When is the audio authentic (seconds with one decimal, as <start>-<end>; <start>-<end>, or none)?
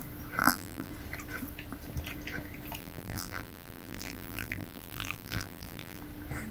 0.0-0.4; 0.9-2.8; 6.0-6.5